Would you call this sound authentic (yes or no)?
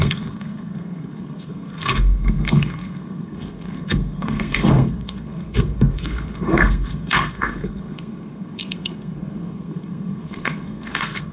no